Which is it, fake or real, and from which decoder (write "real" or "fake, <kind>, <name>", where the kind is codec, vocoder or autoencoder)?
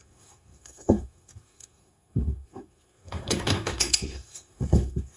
fake, codec, SNAC